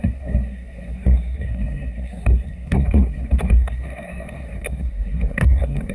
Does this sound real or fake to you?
fake